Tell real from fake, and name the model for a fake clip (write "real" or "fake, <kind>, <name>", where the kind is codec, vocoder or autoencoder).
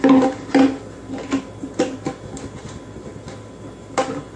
real